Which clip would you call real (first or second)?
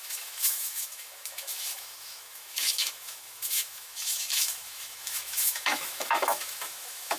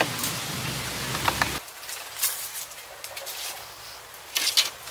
second